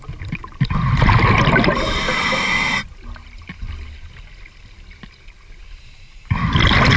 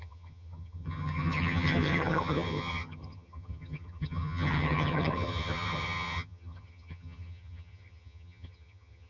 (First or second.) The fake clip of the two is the second